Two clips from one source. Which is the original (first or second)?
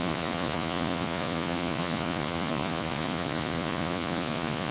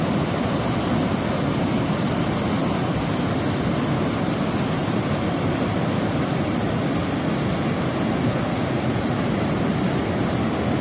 second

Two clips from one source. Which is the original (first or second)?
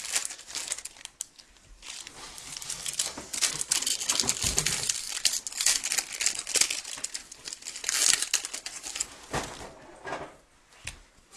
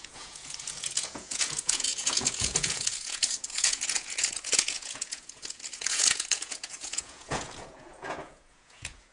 first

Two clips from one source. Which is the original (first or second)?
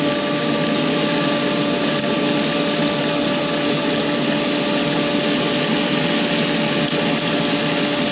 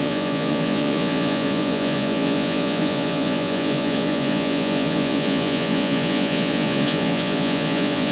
first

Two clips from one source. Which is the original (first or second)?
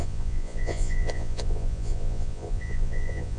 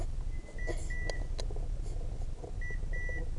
second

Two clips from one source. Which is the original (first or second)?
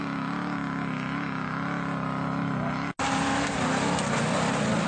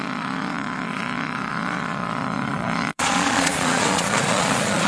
first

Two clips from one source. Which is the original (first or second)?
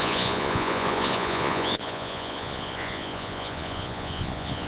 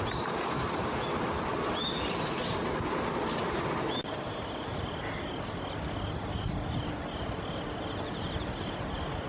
second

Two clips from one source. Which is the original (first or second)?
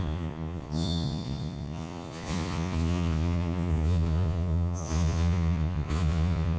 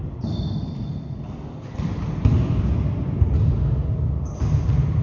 second